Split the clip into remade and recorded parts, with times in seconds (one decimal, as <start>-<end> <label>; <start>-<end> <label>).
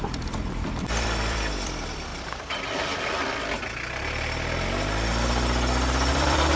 0.0-2.1 remade; 2.1-6.1 recorded; 6.1-6.6 remade